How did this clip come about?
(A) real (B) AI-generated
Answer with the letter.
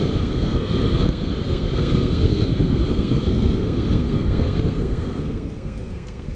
B